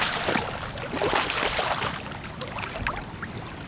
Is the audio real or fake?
real